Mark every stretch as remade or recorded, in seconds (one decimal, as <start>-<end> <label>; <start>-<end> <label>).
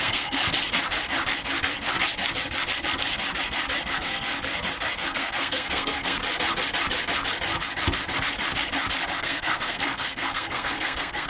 0.0-0.4 remade; 0.4-3.9 recorded; 3.9-4.3 remade; 4.3-5.0 recorded; 5.0-6.2 remade; 6.2-9.2 recorded; 9.2-11.3 remade